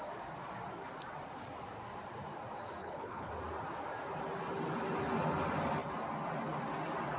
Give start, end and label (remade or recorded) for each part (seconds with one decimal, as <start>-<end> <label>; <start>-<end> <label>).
0.0-2.8 recorded; 2.8-3.3 remade; 3.3-7.2 recorded